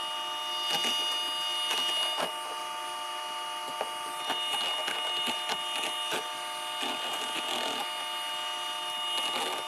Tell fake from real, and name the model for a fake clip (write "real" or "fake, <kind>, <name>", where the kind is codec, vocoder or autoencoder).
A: real